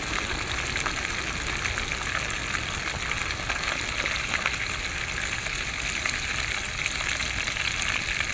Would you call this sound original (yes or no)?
yes